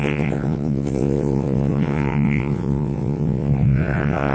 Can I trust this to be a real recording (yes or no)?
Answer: no